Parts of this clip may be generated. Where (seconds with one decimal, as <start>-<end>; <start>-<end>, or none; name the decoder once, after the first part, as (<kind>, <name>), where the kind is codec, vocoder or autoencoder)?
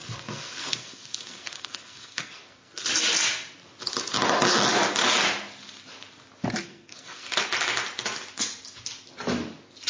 0.0-2.9 (codec, SNAC); 6.7-7.4